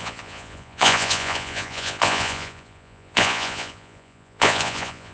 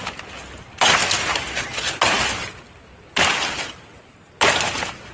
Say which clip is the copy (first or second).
first